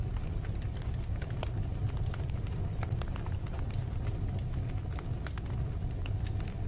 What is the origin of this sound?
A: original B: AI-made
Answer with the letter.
A